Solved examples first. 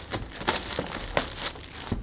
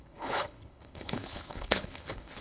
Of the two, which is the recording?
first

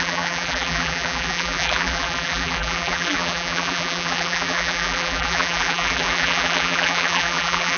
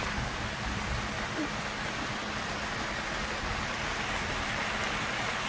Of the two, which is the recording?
second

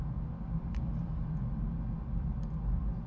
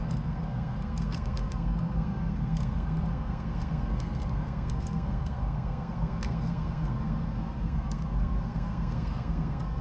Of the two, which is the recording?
first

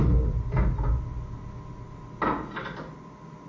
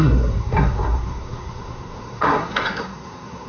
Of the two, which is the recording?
first